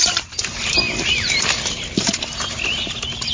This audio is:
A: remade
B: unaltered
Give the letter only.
B